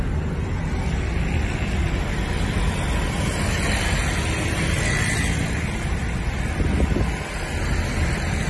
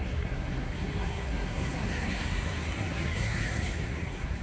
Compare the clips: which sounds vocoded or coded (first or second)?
second